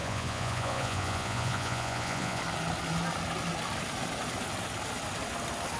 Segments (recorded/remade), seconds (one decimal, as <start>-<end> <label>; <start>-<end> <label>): 0.0-2.4 remade; 2.4-5.8 recorded